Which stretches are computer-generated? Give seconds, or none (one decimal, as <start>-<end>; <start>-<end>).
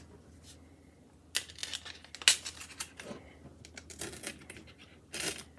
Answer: none